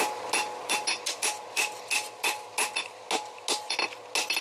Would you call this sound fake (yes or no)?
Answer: no